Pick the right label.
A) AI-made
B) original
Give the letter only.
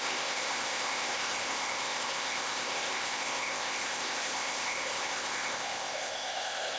A